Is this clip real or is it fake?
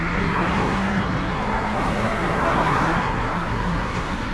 fake